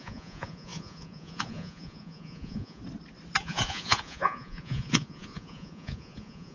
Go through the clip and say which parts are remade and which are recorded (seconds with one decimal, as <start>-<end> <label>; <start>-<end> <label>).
0.0-2.8 remade; 2.8-3.4 recorded; 3.4-6.5 remade